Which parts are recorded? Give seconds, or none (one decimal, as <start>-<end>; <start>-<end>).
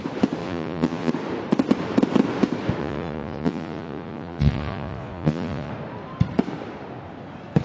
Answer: 0.0-0.4; 1.1-2.8; 5.7-7.6